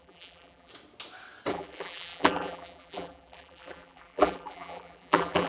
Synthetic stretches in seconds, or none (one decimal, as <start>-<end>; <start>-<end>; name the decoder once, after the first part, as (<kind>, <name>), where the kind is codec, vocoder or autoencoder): 0.0-0.7 (vocoder, BigVGAN v2); 1.5-5.5